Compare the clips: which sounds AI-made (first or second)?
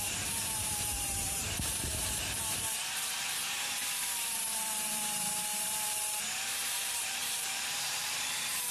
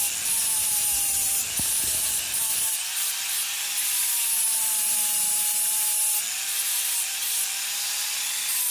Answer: first